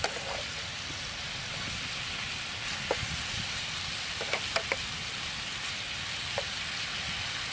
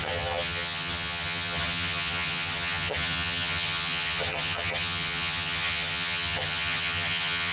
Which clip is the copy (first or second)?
second